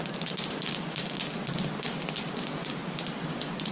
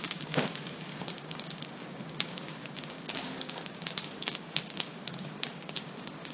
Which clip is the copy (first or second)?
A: second